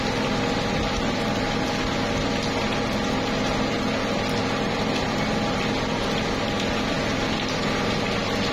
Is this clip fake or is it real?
real